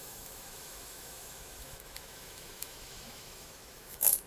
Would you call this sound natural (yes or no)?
no